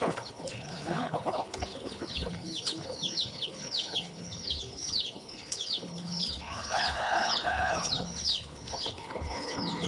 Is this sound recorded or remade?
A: remade